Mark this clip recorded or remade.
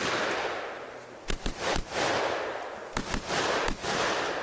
recorded